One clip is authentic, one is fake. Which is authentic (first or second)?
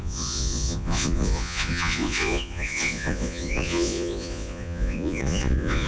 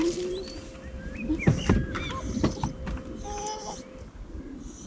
second